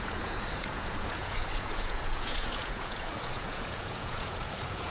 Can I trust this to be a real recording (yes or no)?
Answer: no